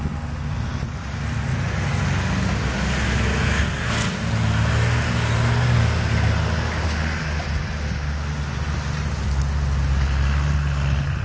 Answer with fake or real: real